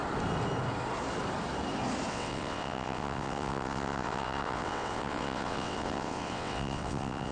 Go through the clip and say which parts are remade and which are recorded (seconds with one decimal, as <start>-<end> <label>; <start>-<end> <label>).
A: 0.0-2.1 recorded; 2.1-7.3 remade

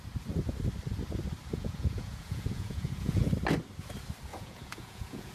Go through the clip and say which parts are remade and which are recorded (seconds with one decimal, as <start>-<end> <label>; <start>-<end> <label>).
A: 0.0-1.5 recorded; 1.5-3.3 remade; 3.3-4.3 recorded; 4.3-5.3 remade

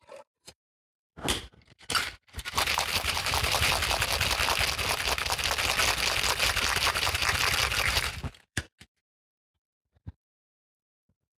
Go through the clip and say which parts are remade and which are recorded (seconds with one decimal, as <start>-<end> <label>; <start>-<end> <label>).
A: 0.0-3.7 remade; 3.7-6.4 recorded; 6.4-7.2 remade; 7.2-7.8 recorded; 7.8-11.4 remade

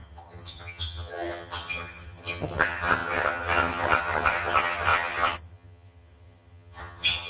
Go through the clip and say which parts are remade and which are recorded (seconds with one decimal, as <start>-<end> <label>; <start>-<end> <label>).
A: 0.0-7.3 remade

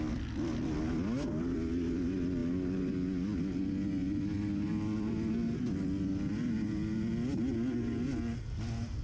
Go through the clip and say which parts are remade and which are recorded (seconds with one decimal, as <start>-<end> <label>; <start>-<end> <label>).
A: 0.0-9.0 recorded

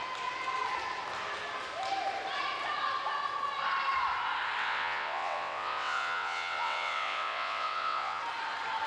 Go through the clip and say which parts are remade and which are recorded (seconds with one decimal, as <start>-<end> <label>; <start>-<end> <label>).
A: 0.0-4.6 recorded; 4.6-8.2 remade; 8.2-8.9 recorded

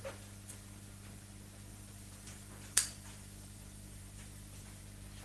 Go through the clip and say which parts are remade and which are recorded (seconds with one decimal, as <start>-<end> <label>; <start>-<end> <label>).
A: 0.0-1.7 recorded; 1.7-4.8 remade; 4.8-5.2 recorded

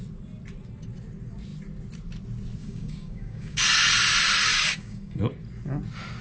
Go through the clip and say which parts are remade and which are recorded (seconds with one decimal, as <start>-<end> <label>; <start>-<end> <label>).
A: 0.0-2.6 recorded; 2.6-3.6 remade; 3.6-4.5 recorded; 4.5-5.2 remade; 5.2-6.2 recorded